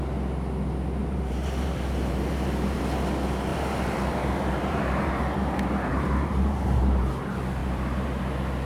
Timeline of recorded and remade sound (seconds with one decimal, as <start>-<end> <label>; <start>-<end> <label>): 0.0-1.0 recorded; 1.0-2.8 remade; 2.8-3.5 recorded; 3.5-5.1 remade; 5.1-5.9 recorded; 5.9-7.1 remade; 7.1-7.6 recorded; 7.6-8.2 remade; 8.2-8.6 recorded